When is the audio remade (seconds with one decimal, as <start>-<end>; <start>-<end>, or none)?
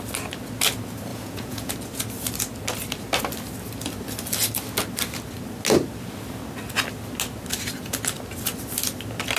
1.1-1.7